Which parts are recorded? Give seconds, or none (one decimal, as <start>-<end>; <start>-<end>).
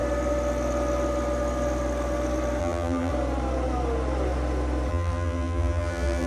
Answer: 0.0-2.6; 3.1-4.9